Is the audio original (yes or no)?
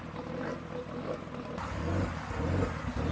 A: yes